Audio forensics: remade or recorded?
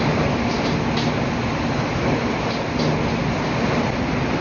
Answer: recorded